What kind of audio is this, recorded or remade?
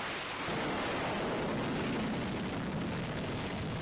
recorded